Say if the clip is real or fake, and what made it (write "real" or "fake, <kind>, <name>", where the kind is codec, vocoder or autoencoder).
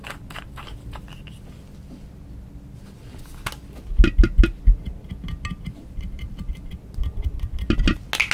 real